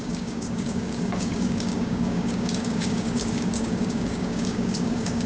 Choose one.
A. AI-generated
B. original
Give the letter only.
A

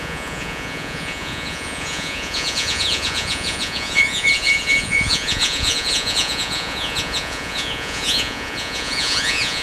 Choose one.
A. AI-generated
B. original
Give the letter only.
A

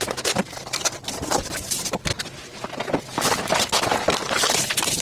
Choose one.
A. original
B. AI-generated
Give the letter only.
B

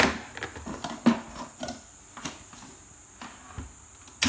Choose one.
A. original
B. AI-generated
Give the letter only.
A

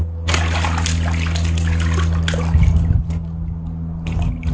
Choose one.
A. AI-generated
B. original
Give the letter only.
B